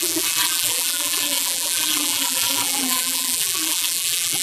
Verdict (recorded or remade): remade